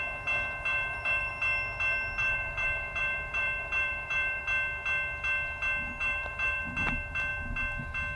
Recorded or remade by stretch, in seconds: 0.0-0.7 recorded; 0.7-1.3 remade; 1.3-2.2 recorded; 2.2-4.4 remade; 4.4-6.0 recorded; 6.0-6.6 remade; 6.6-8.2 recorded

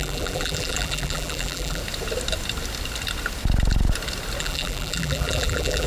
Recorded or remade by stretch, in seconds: 0.0-1.8 remade; 1.8-4.4 recorded; 4.4-5.9 remade

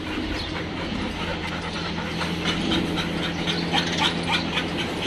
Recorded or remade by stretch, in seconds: 0.0-5.1 recorded